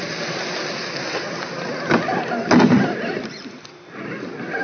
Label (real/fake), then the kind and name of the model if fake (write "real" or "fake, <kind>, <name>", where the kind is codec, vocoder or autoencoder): real